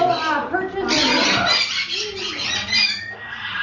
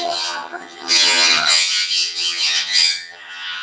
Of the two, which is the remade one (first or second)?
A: second